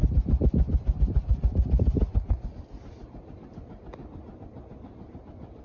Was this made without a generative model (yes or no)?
yes